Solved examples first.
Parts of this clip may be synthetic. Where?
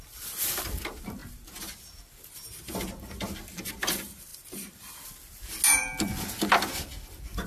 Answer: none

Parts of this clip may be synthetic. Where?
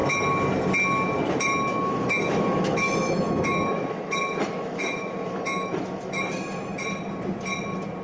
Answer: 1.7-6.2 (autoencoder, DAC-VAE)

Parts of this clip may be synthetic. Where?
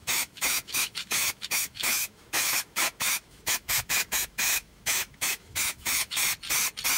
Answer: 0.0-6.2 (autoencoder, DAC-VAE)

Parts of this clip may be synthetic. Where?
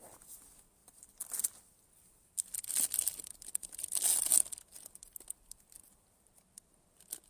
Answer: none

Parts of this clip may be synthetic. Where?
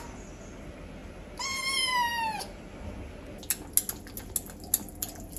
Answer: none